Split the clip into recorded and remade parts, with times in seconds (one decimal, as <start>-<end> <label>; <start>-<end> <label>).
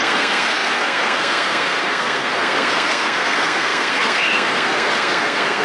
0.0-5.6 remade